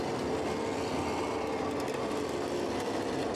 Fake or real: fake